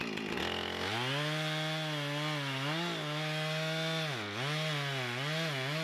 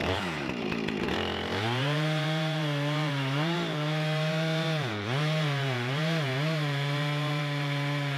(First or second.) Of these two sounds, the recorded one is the first